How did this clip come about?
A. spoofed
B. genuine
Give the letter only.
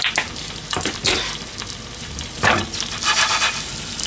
B